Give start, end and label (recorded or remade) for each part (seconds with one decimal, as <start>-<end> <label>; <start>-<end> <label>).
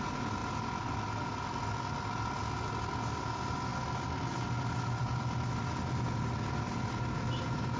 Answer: 0.0-7.8 recorded